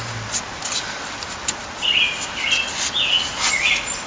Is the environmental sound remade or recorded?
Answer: recorded